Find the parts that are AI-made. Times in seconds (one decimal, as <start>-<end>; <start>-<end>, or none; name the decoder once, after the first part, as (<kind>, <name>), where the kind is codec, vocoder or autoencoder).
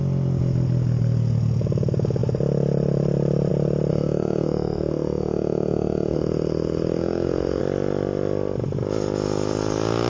3.9-7.6 (autoencoder, DAC-VAE)